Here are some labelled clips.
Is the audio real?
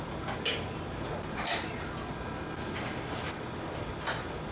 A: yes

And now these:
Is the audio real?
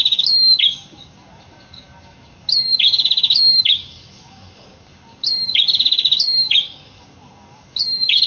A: no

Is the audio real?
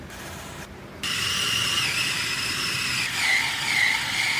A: yes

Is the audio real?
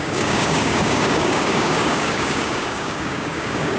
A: no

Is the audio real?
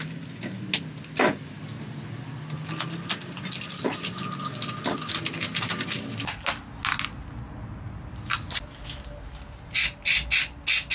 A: yes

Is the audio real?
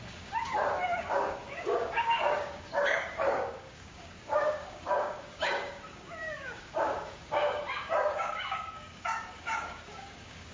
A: no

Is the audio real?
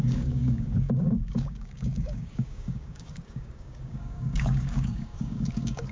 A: no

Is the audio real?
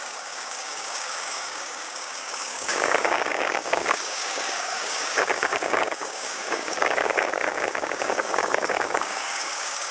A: no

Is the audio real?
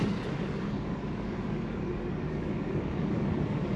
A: no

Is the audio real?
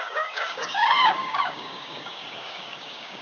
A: no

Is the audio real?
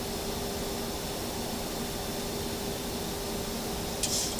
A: yes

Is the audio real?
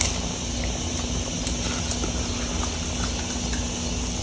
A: yes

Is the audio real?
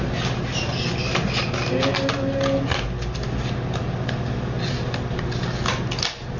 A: yes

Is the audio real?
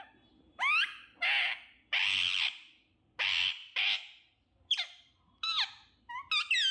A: yes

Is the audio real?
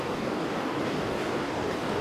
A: no